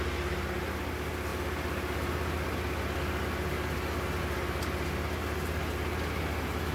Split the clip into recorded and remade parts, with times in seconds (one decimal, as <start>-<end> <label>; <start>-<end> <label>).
0.0-6.7 recorded